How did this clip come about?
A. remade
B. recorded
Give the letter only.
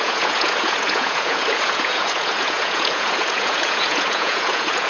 A